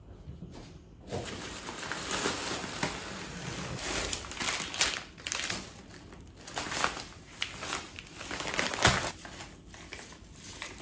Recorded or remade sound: recorded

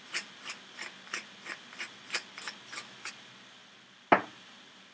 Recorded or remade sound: recorded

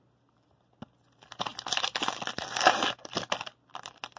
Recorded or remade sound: recorded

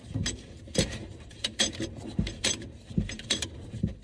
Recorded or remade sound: remade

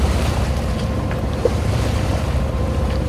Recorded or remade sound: remade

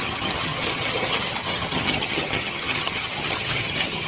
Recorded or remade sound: remade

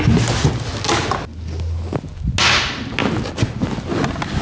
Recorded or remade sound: recorded